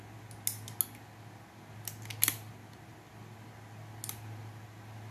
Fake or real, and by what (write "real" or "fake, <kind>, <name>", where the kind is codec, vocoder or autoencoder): real